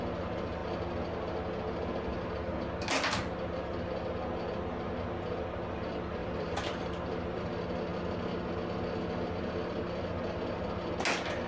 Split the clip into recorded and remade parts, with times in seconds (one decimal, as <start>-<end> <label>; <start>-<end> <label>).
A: 0.0-6.2 recorded; 6.2-7.5 remade; 7.5-11.5 recorded